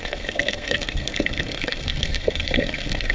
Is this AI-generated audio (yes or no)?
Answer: yes